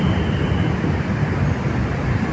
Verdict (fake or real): real